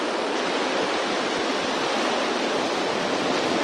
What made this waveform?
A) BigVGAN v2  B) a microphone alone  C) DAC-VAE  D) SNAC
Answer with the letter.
B